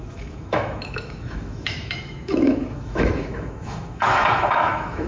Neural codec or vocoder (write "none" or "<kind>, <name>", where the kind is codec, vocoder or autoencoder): autoencoder, DAC-VAE